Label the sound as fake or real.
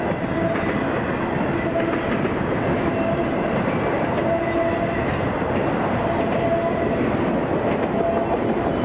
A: real